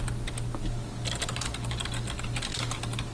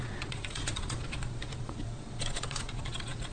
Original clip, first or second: first